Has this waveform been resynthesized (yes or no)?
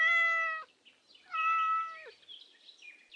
no